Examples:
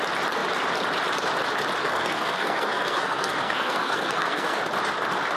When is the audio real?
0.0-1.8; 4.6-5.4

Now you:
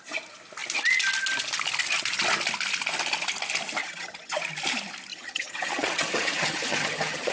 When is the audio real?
0.0-3.8; 4.4-5.1

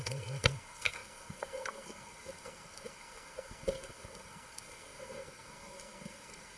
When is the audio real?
none

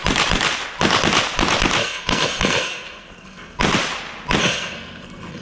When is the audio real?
0.0-1.8; 3.6-4.4

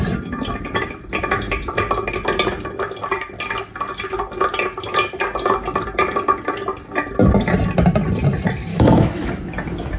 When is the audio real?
0.0-8.7; 9.3-10.0